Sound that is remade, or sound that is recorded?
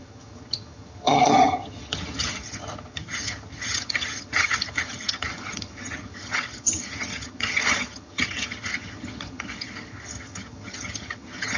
remade